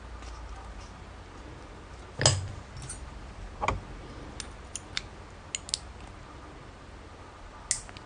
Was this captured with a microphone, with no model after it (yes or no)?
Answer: yes